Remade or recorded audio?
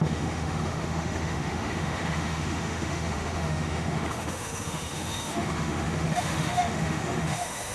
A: remade